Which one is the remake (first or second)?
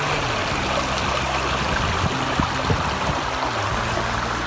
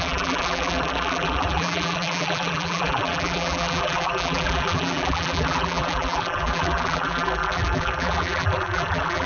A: second